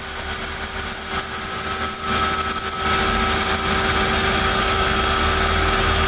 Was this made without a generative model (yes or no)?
yes